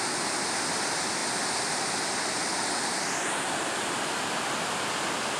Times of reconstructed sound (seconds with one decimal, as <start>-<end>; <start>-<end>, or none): none